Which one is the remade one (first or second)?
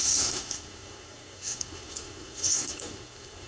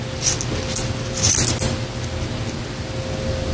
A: first